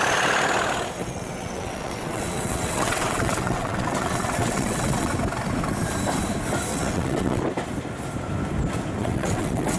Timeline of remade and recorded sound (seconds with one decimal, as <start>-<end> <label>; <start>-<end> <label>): 0.0-1.0 recorded; 1.0-5.1 remade; 5.1-6.7 recorded; 6.7-7.4 remade; 7.4-9.0 recorded; 9.0-9.8 remade